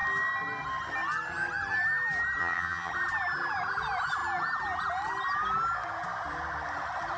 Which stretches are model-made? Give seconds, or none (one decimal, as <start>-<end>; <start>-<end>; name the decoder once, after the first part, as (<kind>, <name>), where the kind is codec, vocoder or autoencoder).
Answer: 2.4-2.9 (vocoder, HiFi-GAN)